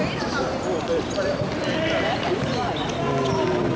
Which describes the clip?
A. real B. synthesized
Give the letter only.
A